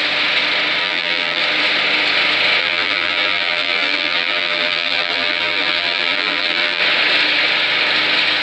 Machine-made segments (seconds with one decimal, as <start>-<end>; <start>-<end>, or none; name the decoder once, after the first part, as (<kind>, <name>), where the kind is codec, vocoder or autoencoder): 0.8-1.4 (vocoder, BigVGAN v2); 2.6-6.8